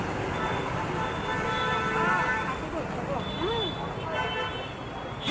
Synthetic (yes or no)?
no